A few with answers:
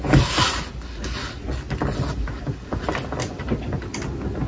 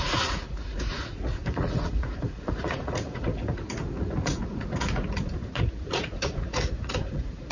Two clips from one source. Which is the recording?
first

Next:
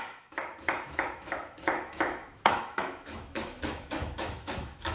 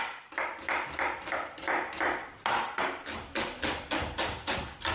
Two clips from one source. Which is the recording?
second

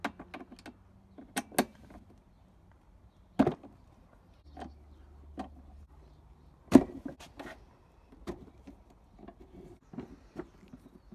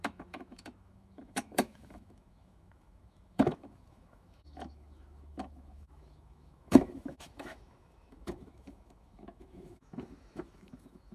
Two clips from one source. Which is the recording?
first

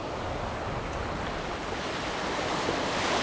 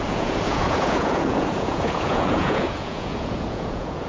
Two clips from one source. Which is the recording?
first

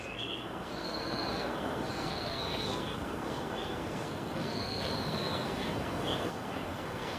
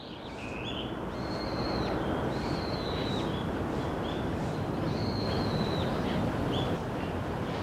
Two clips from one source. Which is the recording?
second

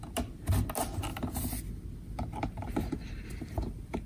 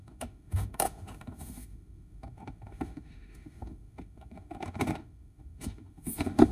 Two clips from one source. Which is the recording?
first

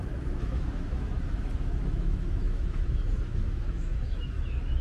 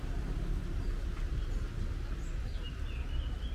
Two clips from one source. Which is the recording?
second